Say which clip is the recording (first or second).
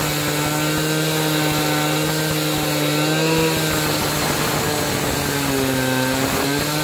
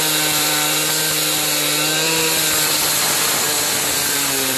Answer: first